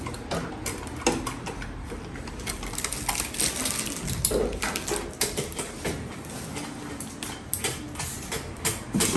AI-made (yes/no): no